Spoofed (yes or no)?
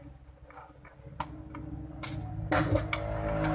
no